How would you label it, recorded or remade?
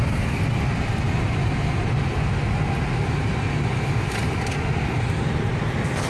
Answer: recorded